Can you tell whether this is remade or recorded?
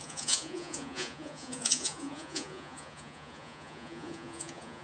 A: remade